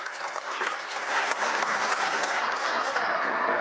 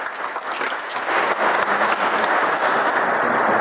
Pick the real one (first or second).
second